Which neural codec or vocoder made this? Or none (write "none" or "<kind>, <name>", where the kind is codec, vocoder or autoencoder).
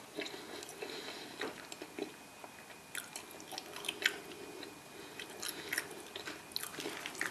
none